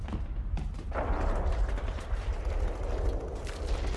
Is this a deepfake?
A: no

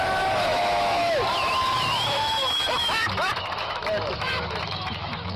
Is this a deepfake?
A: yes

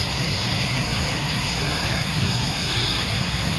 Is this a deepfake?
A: yes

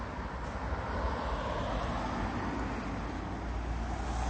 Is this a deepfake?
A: no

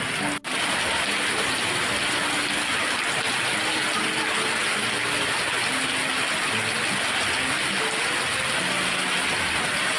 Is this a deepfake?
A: no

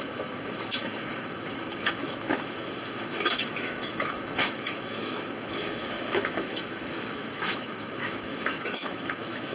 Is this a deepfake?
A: yes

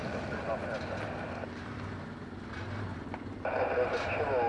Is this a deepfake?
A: no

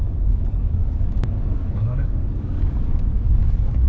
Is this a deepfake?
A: yes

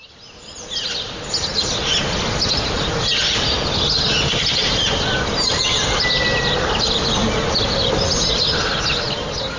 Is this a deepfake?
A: no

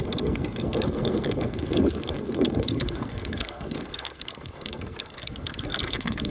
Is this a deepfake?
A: yes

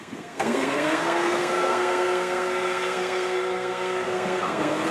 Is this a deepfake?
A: yes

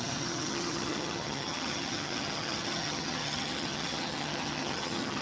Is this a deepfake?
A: yes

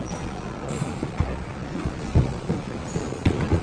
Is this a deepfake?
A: yes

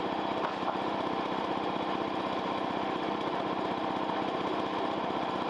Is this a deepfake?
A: yes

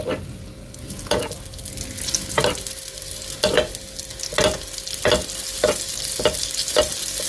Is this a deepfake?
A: no